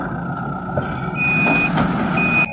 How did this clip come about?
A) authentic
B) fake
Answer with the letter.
A